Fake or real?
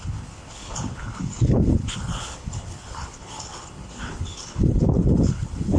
fake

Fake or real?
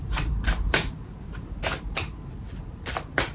fake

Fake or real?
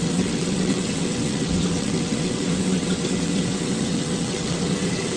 fake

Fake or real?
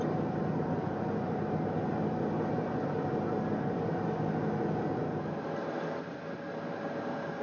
real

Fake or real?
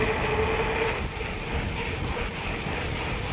real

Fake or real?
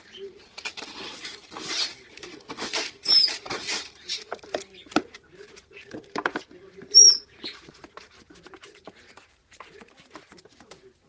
fake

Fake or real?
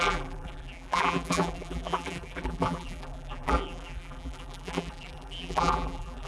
fake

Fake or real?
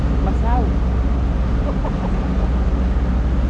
real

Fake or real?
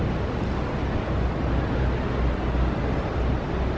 real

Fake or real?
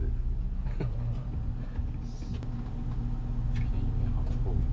real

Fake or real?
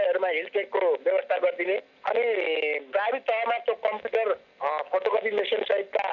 real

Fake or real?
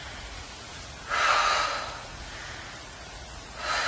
fake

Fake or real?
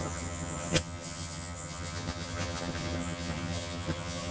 fake